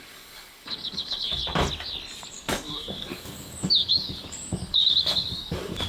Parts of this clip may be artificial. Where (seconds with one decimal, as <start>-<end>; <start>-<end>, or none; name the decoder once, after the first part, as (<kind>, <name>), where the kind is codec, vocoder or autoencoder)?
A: 0.0-1.4 (codec, DAC); 2.3-5.9